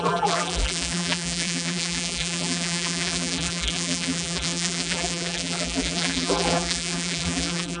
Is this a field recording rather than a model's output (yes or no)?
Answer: no